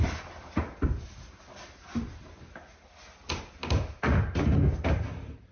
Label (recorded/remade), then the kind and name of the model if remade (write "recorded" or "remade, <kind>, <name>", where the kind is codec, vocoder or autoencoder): recorded